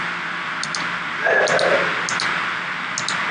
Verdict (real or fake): real